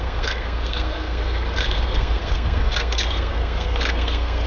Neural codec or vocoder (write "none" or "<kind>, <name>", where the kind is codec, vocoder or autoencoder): codec, SNAC